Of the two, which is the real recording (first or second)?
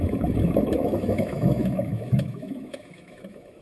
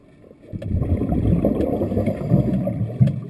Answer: second